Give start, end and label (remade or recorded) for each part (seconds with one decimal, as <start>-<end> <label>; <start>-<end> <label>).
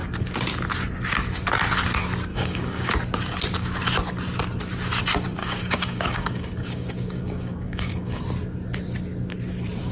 0.0-2.3 recorded; 2.3-2.9 remade; 2.9-5.4 recorded; 5.4-8.2 remade; 8.2-9.9 recorded